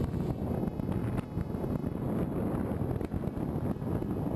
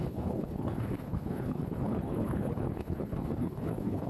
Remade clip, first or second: second